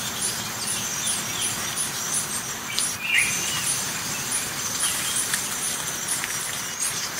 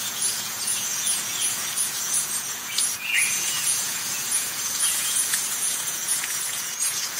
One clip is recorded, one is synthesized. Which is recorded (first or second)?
first